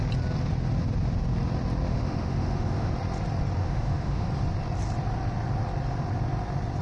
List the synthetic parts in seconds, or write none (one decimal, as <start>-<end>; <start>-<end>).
1.9-2.9; 3.6-4.3